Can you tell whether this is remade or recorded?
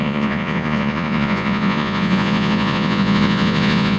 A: remade